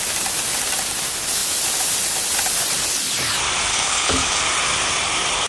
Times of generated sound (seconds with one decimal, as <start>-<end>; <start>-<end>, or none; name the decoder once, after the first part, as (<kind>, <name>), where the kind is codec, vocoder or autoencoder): 3.7-4.4 (codec, HILCodec)